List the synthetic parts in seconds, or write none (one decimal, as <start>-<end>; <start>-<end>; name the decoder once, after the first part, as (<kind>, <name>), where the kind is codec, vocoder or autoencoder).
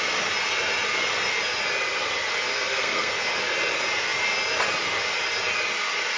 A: 2.5-3.1 (codec, SNAC)